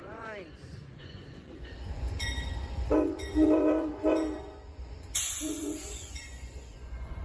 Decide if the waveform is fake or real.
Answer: fake